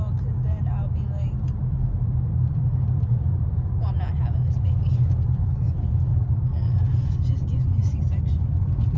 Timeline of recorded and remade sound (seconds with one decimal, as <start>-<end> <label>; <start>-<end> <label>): 0.0-9.0 recorded